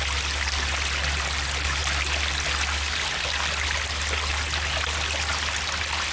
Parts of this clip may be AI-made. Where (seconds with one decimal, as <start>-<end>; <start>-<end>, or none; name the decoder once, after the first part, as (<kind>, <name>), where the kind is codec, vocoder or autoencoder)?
none